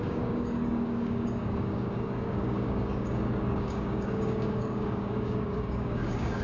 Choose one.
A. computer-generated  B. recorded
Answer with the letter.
A